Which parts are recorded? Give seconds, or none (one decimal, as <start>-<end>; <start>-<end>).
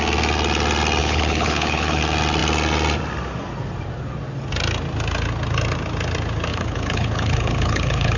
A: 0.0-1.0; 2.0-6.5